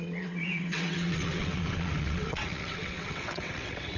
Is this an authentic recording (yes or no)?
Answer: no